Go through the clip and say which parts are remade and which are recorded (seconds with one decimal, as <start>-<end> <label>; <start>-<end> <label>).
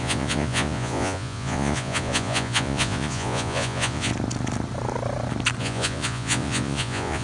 0.0-4.1 remade; 4.1-5.6 recorded; 5.6-7.2 remade